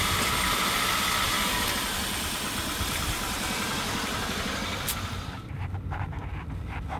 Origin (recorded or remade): recorded